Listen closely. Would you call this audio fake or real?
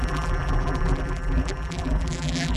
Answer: fake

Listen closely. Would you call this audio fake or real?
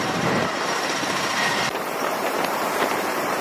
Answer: fake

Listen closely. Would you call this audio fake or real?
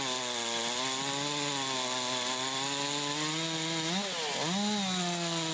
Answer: real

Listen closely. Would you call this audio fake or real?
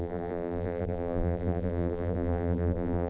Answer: fake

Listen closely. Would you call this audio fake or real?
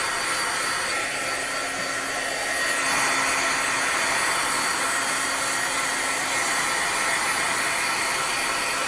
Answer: real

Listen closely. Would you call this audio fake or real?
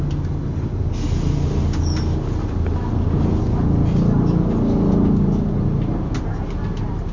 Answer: real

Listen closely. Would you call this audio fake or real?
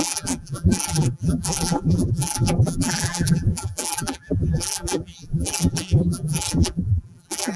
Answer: fake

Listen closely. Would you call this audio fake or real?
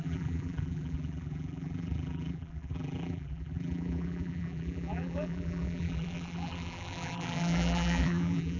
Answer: fake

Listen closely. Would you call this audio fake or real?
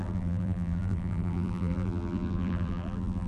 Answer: fake